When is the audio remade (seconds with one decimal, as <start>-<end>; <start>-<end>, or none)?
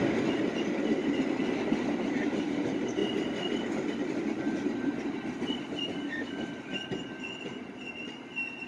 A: none